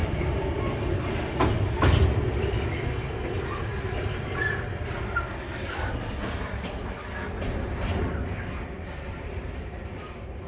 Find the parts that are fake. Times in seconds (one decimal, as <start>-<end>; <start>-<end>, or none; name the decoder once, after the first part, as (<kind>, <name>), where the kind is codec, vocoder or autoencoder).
none